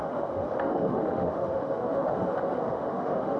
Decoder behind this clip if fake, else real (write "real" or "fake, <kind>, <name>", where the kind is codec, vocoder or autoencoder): fake, autoencoder, DAC-VAE